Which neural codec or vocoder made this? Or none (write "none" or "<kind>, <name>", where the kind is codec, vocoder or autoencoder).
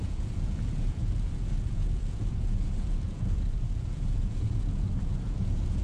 vocoder, Vocos